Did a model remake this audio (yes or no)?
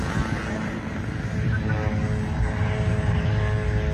no